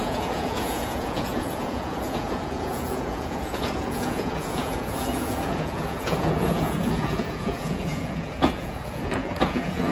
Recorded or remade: remade